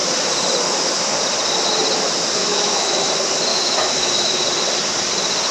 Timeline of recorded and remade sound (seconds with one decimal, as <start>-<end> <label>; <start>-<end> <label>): 0.0-2.4 recorded; 2.4-3.1 remade; 3.1-3.5 recorded; 3.5-4.4 remade; 4.4-5.5 recorded